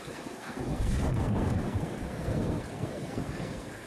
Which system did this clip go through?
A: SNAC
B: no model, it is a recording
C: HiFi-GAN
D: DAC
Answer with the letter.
A